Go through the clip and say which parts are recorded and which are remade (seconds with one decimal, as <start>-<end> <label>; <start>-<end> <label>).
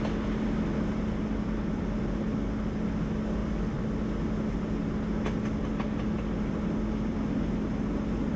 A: 0.0-8.4 recorded